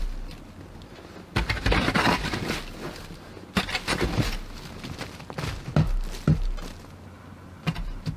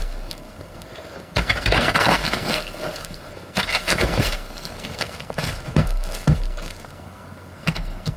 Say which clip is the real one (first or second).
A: first